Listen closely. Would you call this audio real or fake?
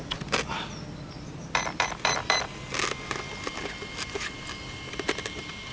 real